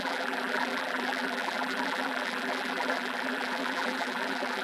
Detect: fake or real fake